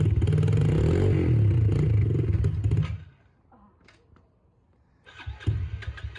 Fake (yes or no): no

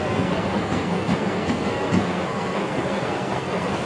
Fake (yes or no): yes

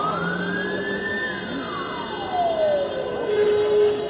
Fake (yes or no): no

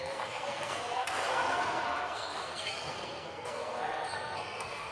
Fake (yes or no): yes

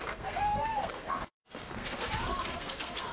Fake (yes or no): yes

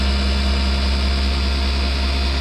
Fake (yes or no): no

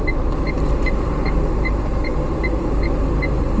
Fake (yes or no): no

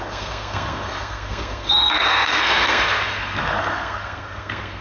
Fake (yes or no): yes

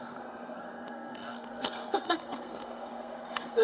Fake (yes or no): yes